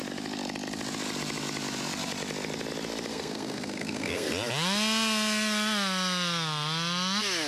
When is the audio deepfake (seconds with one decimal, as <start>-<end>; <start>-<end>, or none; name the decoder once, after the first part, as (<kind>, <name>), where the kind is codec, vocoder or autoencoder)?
3.1-4.3 (codec, SNAC)